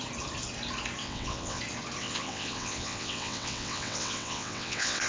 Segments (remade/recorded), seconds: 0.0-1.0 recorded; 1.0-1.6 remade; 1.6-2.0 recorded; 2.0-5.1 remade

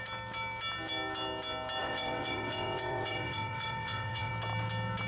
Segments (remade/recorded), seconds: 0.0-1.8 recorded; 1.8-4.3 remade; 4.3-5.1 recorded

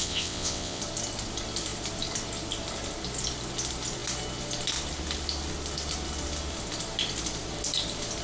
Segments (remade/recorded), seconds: 0.0-0.8 remade; 0.8-8.2 recorded

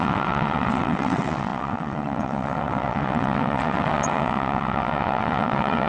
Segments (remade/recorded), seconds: 0.0-5.9 remade